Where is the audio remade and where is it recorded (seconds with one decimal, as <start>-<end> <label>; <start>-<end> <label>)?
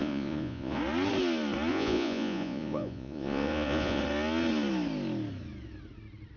0.0-0.8 remade; 0.8-1.7 recorded; 1.7-4.0 remade; 4.0-6.4 recorded